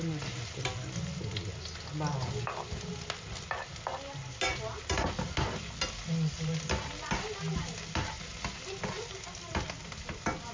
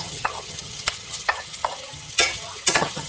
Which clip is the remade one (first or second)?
second